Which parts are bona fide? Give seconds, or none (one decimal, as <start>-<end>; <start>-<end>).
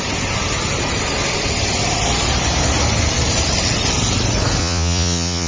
0.0-4.6